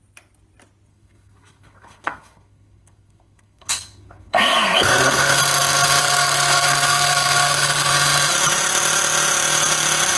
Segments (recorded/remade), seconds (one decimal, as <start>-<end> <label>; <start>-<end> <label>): 0.0-0.9 recorded; 0.9-5.4 remade; 5.4-6.0 recorded; 6.0-7.9 remade; 7.9-10.2 recorded

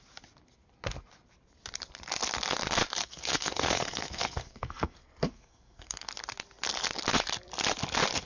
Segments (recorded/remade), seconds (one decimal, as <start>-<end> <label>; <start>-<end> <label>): 0.0-3.0 recorded; 3.0-6.1 remade; 6.1-8.3 recorded

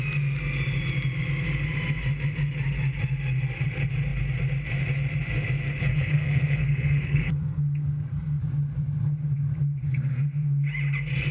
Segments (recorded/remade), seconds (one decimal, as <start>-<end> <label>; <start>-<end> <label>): 0.0-5.9 recorded; 5.9-8.4 remade; 8.4-11.3 recorded

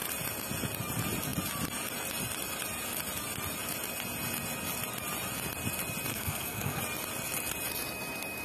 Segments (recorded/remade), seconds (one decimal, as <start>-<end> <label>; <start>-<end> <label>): 0.0-6.1 recorded; 6.1-6.8 remade; 6.8-8.4 recorded